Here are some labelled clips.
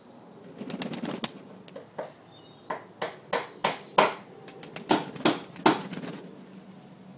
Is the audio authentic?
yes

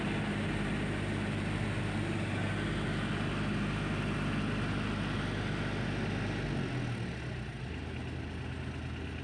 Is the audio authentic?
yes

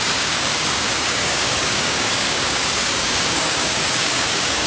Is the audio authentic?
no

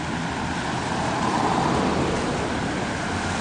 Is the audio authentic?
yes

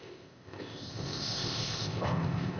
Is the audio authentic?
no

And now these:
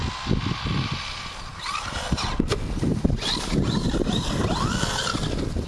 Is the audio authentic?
yes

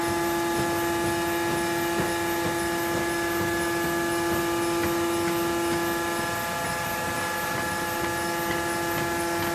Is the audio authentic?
yes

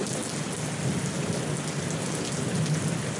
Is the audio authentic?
yes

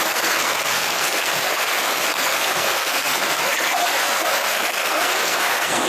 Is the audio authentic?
no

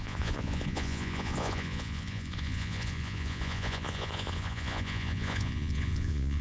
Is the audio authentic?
no